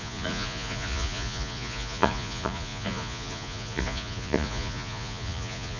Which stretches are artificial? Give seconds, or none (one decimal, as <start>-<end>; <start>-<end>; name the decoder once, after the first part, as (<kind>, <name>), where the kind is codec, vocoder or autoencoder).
0.0-5.8 (vocoder, Vocos)